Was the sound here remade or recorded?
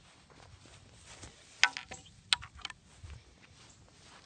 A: recorded